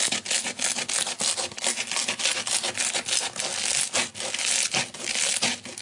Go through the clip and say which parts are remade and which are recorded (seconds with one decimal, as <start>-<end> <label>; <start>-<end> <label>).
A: 0.0-5.8 recorded